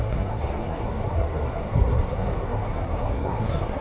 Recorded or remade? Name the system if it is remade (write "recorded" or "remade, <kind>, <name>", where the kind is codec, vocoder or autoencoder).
remade, codec, SNAC